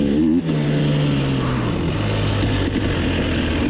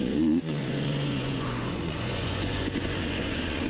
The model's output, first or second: second